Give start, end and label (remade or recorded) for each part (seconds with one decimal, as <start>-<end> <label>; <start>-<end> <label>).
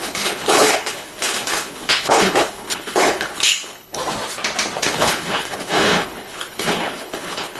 0.0-4.0 remade; 4.0-4.8 recorded; 4.8-7.6 remade